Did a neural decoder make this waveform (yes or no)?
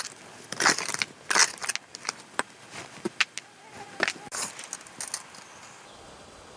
no